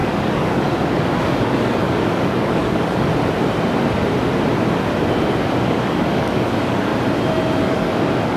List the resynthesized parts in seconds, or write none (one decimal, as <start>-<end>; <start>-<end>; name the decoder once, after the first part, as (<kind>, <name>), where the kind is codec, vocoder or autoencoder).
0.0-3.1 (codec, DAC); 5.5-6.9; 7.6-8.4